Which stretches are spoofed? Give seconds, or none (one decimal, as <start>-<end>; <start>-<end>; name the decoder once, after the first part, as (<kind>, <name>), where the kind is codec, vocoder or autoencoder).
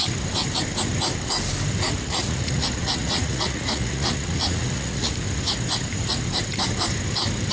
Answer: 2.0-5.1 (vocoder, Vocos)